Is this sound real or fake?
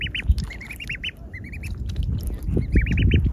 real